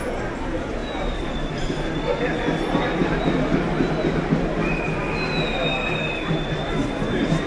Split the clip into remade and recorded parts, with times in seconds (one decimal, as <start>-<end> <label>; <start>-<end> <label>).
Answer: 0.0-7.5 recorded